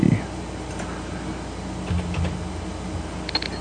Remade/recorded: recorded